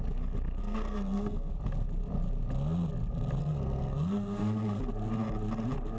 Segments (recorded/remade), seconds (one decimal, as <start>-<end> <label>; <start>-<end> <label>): 0.0-0.6 recorded; 0.6-1.5 remade; 1.5-3.4 recorded; 3.4-4.8 remade; 4.8-6.0 recorded

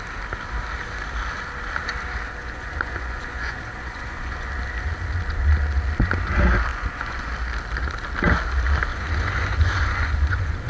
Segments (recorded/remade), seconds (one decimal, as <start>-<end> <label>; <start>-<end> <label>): 0.0-2.4 recorded; 2.4-4.5 remade; 4.5-6.7 recorded; 6.7-7.3 remade; 7.3-8.9 recorded; 8.9-10.7 remade

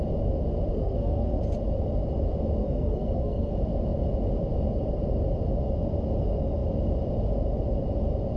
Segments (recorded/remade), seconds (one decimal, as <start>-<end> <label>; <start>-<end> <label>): 0.0-0.7 recorded; 0.7-1.4 remade; 1.4-2.6 recorded; 2.6-3.5 remade; 3.5-8.4 recorded

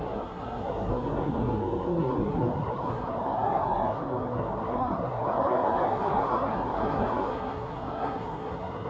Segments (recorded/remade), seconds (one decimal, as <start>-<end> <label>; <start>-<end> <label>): 0.0-8.9 remade

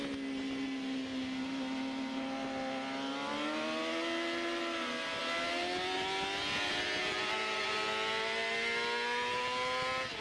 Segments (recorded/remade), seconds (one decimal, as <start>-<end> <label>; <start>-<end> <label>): 0.0-10.2 recorded

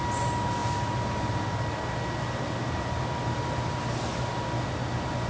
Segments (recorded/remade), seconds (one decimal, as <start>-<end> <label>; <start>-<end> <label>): 0.0-5.3 recorded